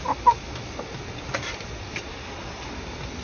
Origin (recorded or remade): recorded